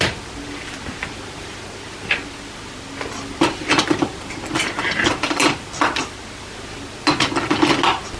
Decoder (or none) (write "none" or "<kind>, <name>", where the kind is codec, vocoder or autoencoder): none